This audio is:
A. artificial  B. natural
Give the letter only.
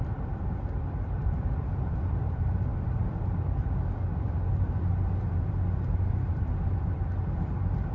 A